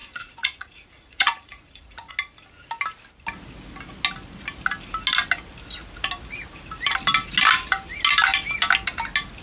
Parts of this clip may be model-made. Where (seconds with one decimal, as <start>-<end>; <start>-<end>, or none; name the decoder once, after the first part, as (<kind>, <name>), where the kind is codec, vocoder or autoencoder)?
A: 0.0-2.1 (vocoder, Vocos)